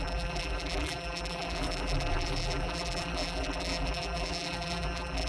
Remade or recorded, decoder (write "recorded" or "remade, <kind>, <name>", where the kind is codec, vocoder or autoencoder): remade, vocoder, BigVGAN v2